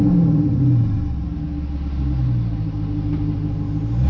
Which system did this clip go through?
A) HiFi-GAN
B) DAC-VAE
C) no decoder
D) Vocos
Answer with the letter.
C